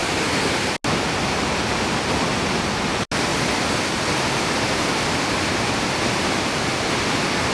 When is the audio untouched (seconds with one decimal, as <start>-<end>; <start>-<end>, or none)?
0.0-3.3; 6.9-7.5